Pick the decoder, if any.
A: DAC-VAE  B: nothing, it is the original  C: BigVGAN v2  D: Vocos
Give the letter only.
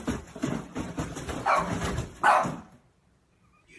B